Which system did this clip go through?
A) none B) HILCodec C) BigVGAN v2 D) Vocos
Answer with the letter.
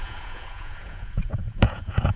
D